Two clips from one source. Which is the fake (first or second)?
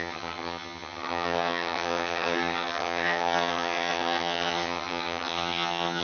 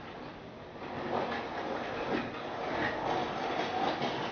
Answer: first